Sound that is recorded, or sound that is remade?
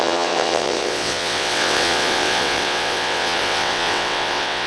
remade